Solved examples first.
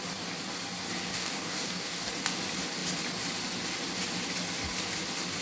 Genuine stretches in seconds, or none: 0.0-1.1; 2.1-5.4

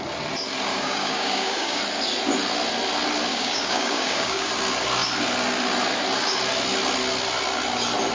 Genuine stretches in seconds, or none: 0.0-0.7; 1.8-3.3; 4.5-8.1

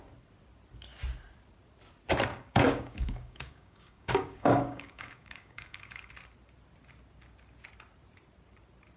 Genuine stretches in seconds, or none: 0.0-2.3; 6.1-9.0

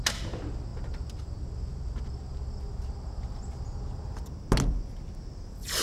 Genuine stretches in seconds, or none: 0.0-5.8

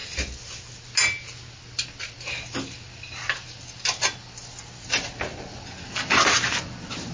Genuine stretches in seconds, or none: 0.0-7.1